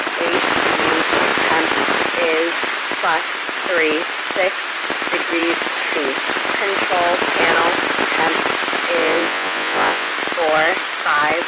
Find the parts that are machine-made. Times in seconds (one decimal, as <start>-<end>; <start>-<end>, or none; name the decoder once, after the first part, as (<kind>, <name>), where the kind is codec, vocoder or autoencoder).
9.0-10.1 (vocoder, Vocos)